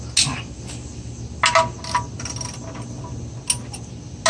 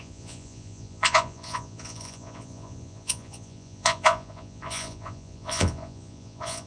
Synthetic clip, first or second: second